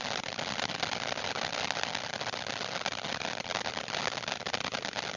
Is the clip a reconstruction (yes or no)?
no